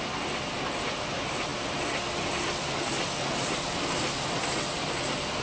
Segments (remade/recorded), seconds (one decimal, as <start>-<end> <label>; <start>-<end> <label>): 0.0-5.4 recorded